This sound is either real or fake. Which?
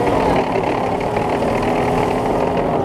real